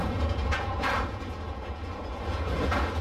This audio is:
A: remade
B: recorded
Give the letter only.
A